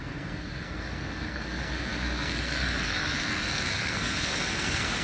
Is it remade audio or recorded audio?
remade